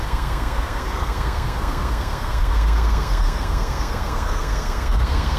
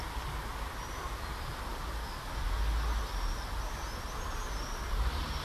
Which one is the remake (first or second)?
first